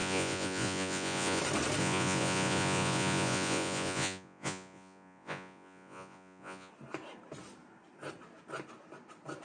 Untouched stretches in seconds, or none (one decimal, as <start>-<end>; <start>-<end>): 1.4-1.8; 6.7-9.4